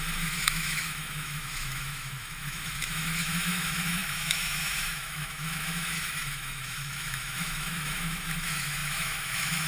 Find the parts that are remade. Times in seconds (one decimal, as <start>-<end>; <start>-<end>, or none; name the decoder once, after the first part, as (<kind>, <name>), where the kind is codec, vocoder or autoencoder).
0.0-9.7 (autoencoder, DAC-VAE)